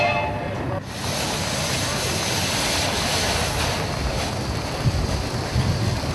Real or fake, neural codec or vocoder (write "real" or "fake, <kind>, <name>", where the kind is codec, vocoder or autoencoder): real